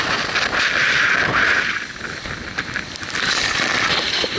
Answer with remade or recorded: recorded